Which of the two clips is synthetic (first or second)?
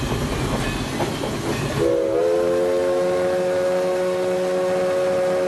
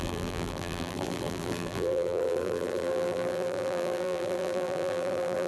second